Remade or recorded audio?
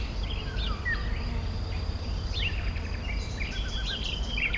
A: recorded